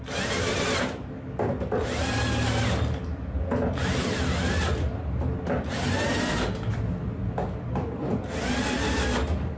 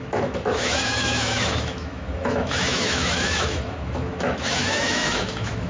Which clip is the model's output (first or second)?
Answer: second